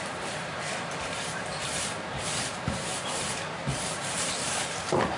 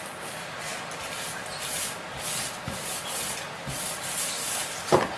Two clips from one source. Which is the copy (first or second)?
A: first